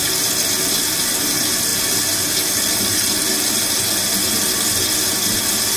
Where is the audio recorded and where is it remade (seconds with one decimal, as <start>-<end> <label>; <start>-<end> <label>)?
0.0-5.8 recorded